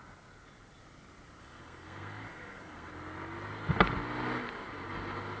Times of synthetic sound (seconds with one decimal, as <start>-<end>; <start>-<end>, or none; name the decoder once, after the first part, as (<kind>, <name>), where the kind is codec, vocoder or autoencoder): 1.4-2.9 (codec, SNAC)